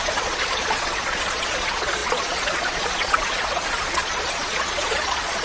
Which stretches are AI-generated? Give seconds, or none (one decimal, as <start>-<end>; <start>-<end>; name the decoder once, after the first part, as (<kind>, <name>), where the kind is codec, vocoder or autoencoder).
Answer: 0.0-5.4 (vocoder, Vocos)